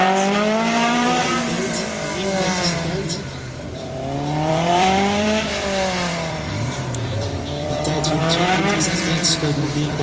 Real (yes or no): no